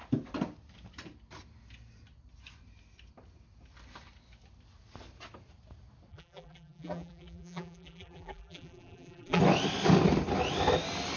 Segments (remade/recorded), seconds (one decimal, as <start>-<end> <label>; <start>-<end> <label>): 0.0-6.1 recorded; 6.1-9.4 remade; 9.4-11.2 recorded